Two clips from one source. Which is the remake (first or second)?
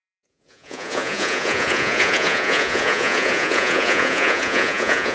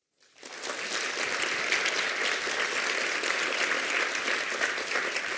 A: first